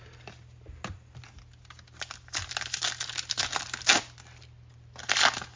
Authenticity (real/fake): real